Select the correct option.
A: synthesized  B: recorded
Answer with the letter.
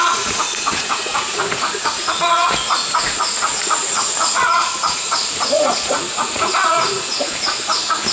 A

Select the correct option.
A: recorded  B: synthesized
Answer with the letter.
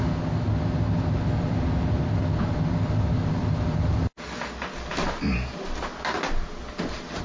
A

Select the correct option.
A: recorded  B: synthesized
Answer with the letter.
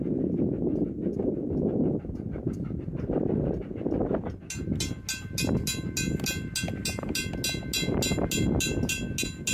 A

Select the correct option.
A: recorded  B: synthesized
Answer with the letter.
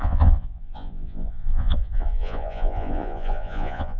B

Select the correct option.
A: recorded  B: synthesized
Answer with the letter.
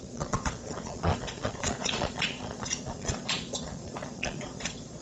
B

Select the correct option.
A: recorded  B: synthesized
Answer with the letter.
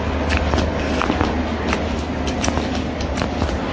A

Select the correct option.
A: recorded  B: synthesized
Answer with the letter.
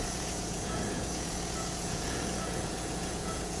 B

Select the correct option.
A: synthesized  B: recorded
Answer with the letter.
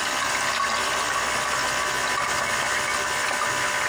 B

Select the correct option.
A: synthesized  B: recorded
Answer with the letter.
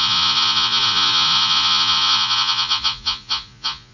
A